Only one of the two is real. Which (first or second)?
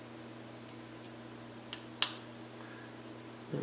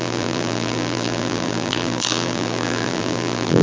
first